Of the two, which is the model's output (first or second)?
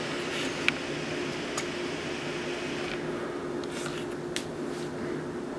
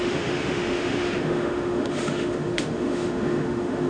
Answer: second